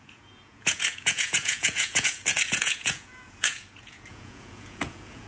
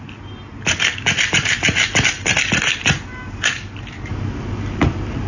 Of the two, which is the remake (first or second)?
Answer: first